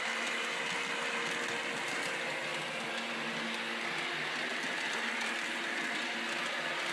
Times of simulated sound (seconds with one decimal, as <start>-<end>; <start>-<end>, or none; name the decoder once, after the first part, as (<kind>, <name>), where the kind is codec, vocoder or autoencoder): none